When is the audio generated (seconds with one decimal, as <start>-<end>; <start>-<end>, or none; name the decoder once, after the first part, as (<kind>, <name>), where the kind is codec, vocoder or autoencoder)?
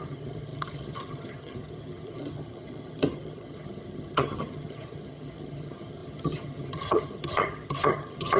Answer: 0.0-8.4 (vocoder, HiFi-GAN)